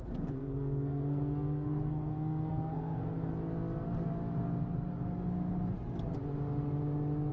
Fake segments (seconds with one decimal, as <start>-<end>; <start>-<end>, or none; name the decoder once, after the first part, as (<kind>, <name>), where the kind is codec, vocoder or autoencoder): 0.0-3.3 (codec, SNAC)